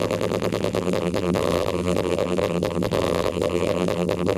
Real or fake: fake